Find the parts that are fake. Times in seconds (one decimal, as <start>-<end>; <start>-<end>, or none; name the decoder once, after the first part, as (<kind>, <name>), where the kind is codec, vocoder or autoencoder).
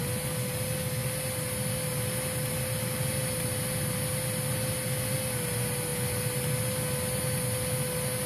none